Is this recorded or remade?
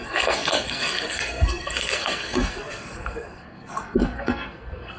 remade